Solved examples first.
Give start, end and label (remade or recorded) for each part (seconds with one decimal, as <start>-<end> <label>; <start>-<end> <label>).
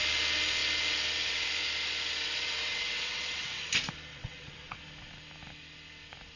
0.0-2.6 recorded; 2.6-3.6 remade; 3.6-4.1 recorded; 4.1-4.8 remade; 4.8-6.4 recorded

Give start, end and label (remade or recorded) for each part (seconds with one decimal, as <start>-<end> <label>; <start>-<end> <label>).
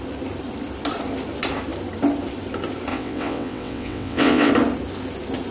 0.0-2.9 recorded; 2.9-4.5 remade; 4.5-5.5 recorded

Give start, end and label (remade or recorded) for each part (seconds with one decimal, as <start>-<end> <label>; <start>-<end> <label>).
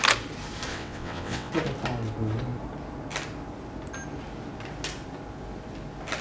0.0-0.7 recorded; 0.7-1.5 remade; 1.5-6.2 recorded